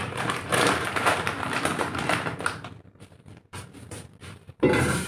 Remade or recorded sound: remade